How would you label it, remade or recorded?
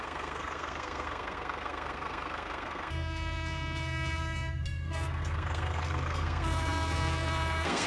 remade